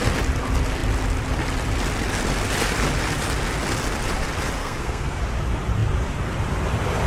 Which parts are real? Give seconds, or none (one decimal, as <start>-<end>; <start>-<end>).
0.0-4.6; 5.2-7.1